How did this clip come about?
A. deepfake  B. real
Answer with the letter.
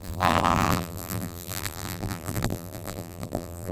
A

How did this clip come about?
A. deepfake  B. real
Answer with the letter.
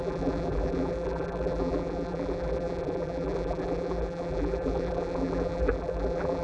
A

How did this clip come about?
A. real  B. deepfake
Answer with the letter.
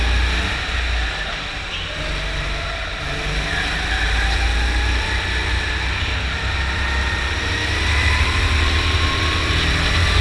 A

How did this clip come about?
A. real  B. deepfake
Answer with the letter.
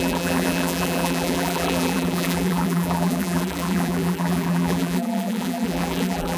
B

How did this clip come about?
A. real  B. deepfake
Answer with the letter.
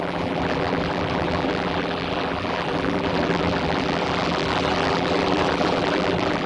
B